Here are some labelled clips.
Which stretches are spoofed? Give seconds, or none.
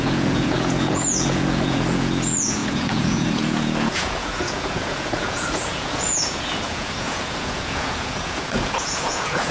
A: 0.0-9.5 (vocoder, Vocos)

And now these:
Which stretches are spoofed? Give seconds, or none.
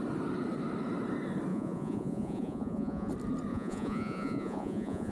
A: 1.5-3.1 (vocoder, Vocos); 3.5-5.1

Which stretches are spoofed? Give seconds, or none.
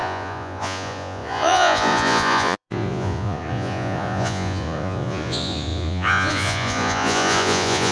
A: 0.0-7.9 (vocoder, Vocos)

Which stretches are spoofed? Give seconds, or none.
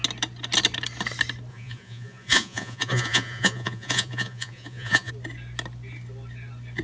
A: 1.5-5.1 (vocoder, Vocos)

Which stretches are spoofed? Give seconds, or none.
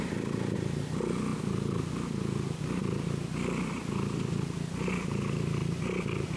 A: none